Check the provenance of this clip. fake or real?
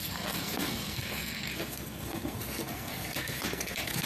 fake